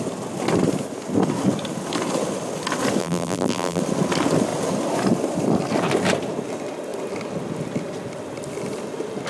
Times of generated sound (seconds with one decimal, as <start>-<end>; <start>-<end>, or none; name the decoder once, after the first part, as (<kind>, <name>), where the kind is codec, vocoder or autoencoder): 3.0-3.8 (vocoder, BigVGAN v2)